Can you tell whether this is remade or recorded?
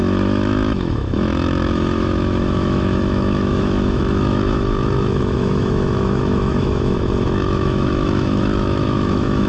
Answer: remade